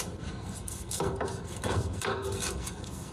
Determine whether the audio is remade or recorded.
remade